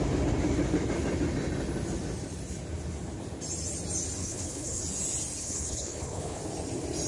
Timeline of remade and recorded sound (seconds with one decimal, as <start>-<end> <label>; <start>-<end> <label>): 0.0-4.2 recorded; 4.2-4.8 remade; 4.8-5.4 recorded; 5.4-6.4 remade; 6.4-7.1 recorded